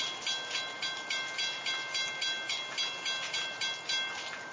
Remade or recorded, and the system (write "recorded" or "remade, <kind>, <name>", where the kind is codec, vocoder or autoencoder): recorded